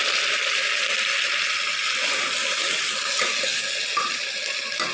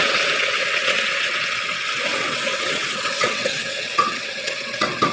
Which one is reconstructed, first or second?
second